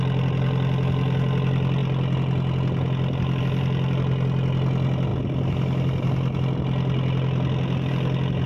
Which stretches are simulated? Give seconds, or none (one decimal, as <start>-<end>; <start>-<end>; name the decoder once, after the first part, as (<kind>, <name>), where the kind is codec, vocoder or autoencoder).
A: none